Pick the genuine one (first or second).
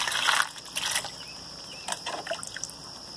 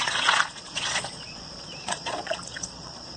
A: first